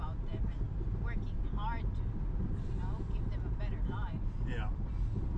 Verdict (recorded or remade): recorded